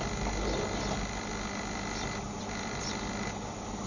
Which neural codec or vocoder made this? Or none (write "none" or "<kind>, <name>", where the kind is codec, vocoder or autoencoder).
none